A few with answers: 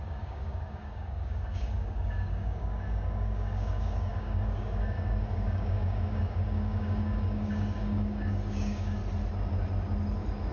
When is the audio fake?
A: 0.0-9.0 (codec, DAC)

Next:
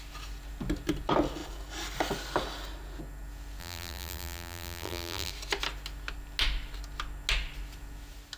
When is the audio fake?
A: 3.6-5.3 (vocoder, BigVGAN v2)

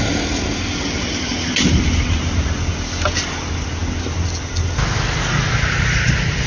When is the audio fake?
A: none